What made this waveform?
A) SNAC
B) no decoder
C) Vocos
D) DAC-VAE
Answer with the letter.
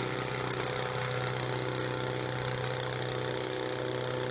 B